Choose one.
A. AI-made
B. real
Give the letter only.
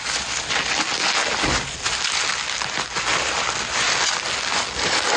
B